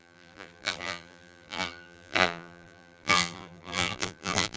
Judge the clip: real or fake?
fake